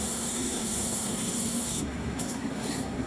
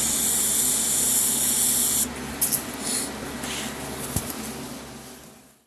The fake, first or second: first